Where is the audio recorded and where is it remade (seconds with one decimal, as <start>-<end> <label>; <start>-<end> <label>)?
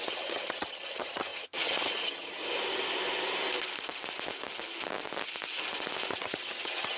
0.0-2.4 remade; 2.4-6.1 recorded; 6.1-7.0 remade